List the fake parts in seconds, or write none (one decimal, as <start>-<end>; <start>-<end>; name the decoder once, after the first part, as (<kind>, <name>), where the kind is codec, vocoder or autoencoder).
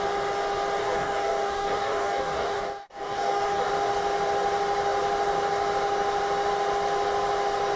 0.8-3.7 (codec, DAC)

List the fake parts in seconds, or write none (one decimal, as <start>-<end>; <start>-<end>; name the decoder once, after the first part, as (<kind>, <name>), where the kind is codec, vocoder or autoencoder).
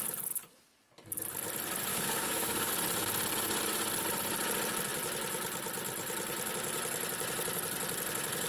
1.9-2.7 (codec, DAC)